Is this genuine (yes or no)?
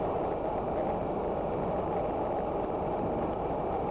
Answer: no